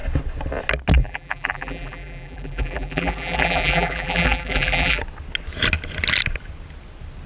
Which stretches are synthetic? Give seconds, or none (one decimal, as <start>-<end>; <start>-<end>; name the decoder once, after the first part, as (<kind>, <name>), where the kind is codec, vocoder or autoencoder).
1.0-5.0 (vocoder, BigVGAN v2)